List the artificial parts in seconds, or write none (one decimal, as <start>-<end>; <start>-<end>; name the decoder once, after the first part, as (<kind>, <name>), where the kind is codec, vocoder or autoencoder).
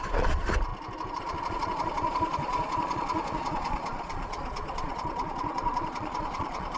0.0-0.7 (vocoder, Vocos); 1.2-6.8